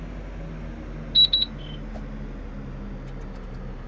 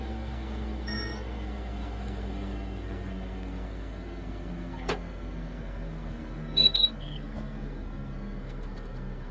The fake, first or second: second